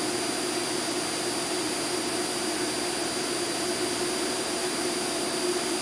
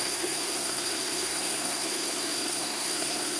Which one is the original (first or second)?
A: first